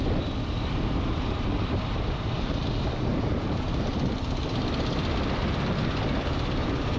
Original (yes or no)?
yes